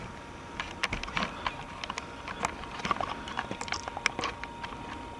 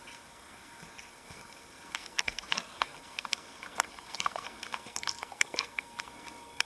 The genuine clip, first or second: first